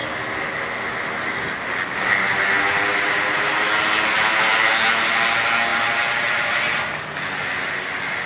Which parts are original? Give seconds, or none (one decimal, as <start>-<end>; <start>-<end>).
0.0-8.3